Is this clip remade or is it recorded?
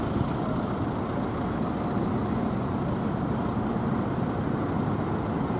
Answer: recorded